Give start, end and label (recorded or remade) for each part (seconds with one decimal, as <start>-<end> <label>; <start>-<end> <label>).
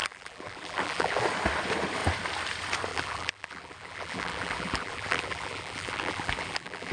0.0-1.2 remade; 1.2-2.9 recorded; 2.9-6.9 remade